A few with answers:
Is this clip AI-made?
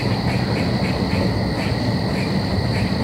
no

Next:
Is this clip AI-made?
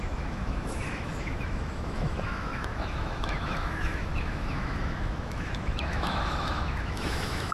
yes